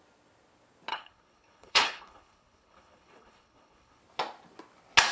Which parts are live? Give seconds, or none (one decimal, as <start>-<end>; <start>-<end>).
0.0-0.9; 4.0-5.1